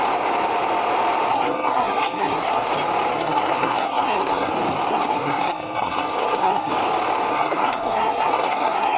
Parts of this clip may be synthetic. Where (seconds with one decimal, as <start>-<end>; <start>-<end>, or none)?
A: 1.3-2.7; 3.1-4.5; 4.9-6.7; 7.3-9.0